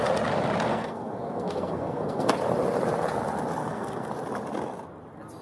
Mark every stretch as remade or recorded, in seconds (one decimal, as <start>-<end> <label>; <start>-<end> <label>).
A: 0.0-0.7 recorded; 0.7-2.3 remade; 2.3-3.6 recorded; 3.6-4.1 remade; 4.1-5.4 recorded